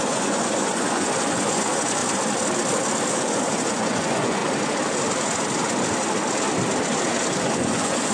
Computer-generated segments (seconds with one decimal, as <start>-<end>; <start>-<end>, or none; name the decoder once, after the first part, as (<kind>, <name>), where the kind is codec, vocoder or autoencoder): 0.0-2.0 (vocoder, Vocos); 3.1-4.4; 7.4-8.1